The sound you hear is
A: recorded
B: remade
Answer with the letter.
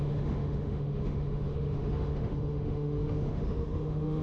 B